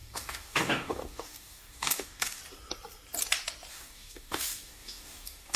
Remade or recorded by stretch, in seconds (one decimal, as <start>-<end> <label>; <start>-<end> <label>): 0.0-2.4 remade; 2.4-3.7 recorded; 3.7-5.6 remade